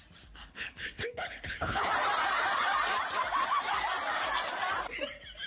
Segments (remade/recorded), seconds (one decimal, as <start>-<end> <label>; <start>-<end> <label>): 0.0-0.4 recorded; 0.4-1.9 remade; 1.9-5.5 recorded